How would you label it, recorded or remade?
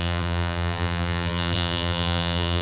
remade